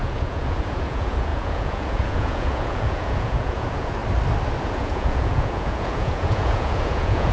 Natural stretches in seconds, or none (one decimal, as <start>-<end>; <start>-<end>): 4.0-4.6

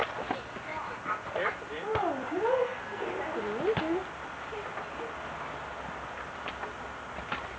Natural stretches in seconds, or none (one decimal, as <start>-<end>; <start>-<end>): 0.0-2.5; 3.0-7.6

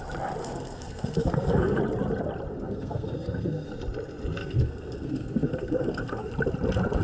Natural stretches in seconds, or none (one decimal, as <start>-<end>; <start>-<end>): 0.0-0.4; 1.8-2.5; 3.7-4.4; 6.3-7.0

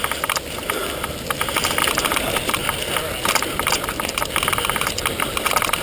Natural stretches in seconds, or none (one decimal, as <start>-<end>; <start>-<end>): 0.0-5.8

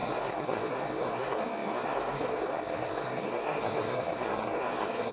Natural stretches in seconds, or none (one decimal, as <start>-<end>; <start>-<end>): none

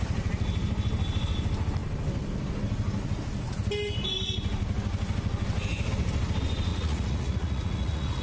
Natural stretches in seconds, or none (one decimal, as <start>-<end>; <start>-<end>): 0.0-6.7

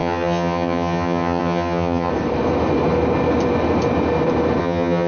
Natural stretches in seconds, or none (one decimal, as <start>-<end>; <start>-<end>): 2.1-4.6

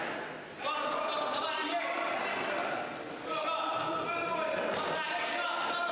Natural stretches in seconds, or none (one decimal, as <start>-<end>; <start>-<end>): 0.0-5.9